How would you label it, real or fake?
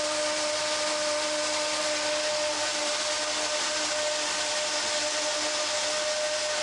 real